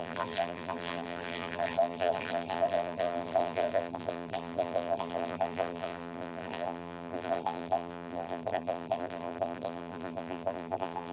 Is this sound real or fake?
fake